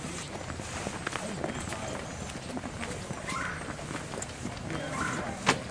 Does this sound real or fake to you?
real